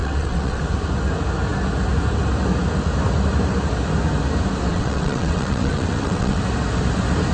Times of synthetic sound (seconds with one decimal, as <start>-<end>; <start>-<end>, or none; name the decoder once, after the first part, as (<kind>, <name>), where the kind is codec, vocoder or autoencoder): 0.0-0.6 (vocoder, WaveNeXt); 4.7-6.4